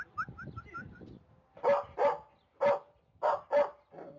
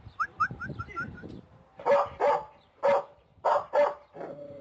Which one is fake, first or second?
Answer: second